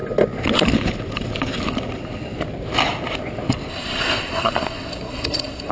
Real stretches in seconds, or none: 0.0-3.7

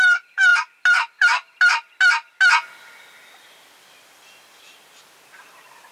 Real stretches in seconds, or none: 0.0-5.9

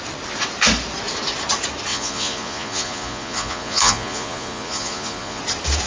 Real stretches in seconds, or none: 0.0-1.9; 5.4-5.9

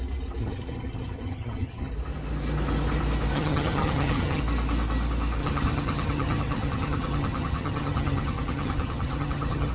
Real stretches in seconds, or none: 0.0-0.4; 1.9-3.3; 4.4-5.4

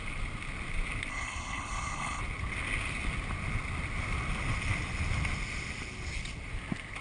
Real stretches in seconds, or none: 0.0-1.1; 2.2-7.0

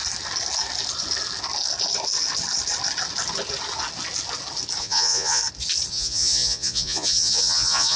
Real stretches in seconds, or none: 0.0-4.8; 5.4-5.9